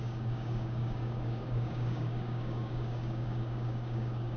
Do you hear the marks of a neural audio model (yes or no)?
yes